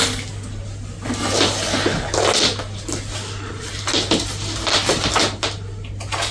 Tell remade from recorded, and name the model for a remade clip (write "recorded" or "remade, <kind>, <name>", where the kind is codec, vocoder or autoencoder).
recorded